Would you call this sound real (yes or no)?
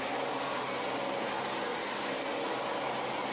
yes